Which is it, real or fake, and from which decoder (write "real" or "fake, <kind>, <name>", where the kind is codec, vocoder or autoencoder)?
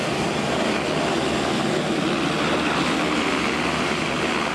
real